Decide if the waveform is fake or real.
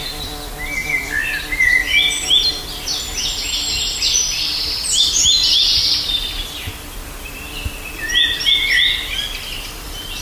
real